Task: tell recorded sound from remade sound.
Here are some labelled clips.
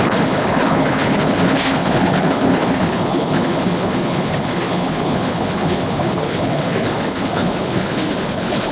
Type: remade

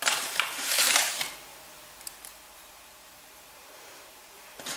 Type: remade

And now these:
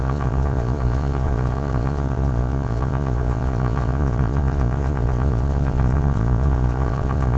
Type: remade